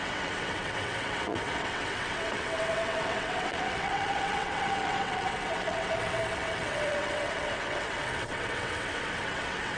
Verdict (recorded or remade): remade